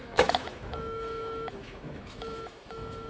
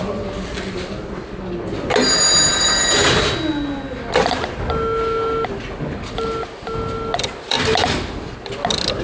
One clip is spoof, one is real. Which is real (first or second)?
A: second